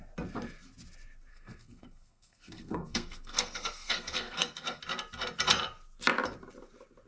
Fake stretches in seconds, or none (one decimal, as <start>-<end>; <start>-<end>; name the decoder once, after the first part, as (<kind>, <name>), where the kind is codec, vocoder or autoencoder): 1.3-4.8 (codec, SNAC)